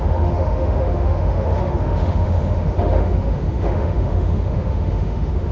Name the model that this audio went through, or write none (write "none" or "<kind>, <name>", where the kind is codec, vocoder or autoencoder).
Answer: autoencoder, DAC-VAE